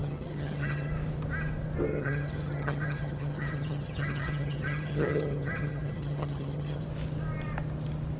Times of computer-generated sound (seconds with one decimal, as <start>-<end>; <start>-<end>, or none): 0.0-0.9; 1.9-6.8

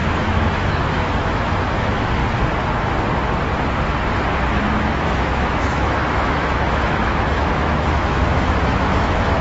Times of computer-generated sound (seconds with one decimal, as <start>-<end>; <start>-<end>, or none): 0.0-2.2; 4.6-9.4

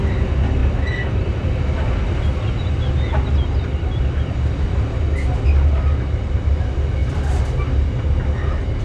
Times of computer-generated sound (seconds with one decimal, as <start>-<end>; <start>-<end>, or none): none

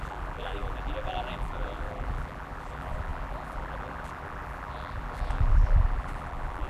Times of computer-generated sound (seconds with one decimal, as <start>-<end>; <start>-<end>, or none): 0.0-6.7

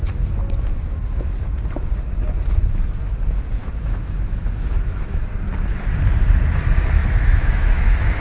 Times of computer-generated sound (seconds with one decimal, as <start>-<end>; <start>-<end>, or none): 3.6-5.2; 7.0-8.2